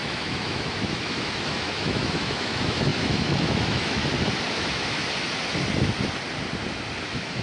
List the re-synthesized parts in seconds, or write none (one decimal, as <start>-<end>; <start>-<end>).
0.0-4.0; 4.5-5.0; 7.0-7.4